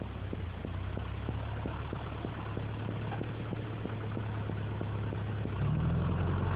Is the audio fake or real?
real